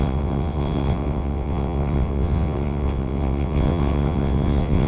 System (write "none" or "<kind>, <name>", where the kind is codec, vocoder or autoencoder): vocoder, WaveNeXt